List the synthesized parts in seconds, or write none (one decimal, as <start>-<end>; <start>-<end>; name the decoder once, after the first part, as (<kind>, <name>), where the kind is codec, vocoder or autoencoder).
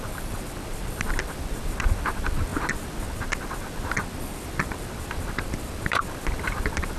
0.0-2.5 (vocoder, BigVGAN v2); 3.2-7.0